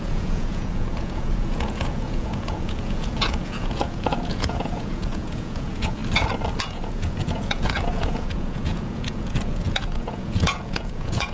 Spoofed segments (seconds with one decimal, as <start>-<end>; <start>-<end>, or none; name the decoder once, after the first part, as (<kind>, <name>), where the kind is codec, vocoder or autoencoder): 0.0-6.0 (vocoder, Vocos); 6.6-11.3